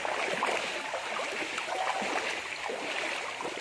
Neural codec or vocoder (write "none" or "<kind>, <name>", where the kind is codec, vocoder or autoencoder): none